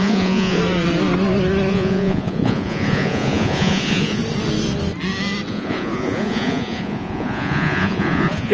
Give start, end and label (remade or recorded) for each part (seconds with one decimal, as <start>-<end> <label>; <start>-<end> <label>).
0.0-0.6 remade; 0.6-1.7 recorded; 1.7-4.2 remade; 4.2-5.5 recorded; 5.5-8.5 remade